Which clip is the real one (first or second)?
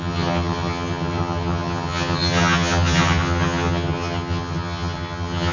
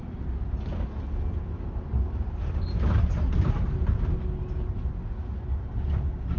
second